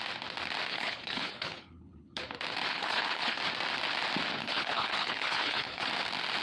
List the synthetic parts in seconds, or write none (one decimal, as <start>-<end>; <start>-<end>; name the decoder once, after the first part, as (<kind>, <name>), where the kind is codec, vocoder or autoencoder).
0.7-2.2 (codec, HILCodec); 2.7-3.4; 4.4-5.9